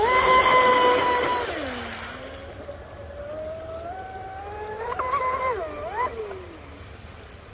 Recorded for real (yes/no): yes